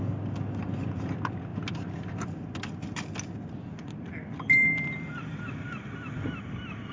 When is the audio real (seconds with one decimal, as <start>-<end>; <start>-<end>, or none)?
0.0-6.9